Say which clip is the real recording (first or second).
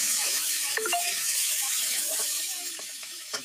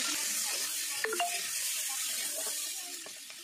second